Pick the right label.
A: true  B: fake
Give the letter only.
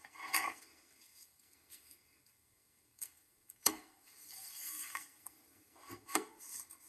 B